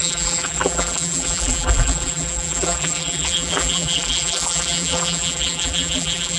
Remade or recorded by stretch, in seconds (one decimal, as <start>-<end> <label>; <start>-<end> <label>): 0.0-6.4 remade